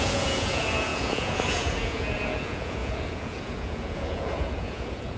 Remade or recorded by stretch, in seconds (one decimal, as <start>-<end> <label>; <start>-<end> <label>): 0.0-5.2 remade